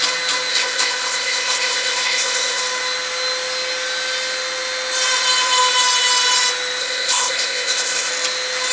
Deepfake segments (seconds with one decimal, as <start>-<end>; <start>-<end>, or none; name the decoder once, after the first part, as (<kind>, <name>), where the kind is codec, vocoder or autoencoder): 0.5-2.6 (codec, ZipCodec); 6.8-8.1